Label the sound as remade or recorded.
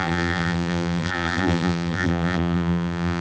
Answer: remade